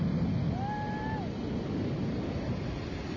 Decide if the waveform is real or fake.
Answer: real